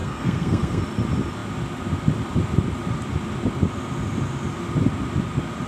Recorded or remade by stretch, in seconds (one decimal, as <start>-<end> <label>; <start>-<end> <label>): 0.0-0.8 remade; 0.8-5.7 recorded